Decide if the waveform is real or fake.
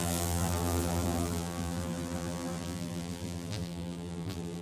fake